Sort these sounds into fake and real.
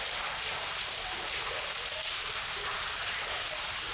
real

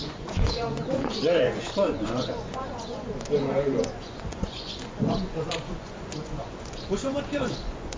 fake